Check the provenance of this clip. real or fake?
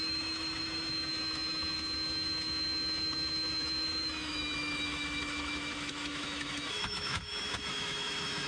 fake